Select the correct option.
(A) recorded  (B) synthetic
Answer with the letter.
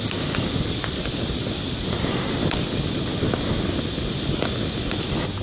A